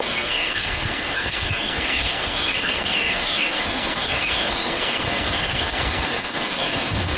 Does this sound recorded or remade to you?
remade